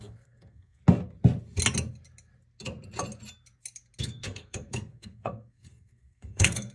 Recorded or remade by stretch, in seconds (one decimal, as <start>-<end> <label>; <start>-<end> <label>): 0.0-0.8 remade; 0.8-4.0 recorded; 4.0-6.7 remade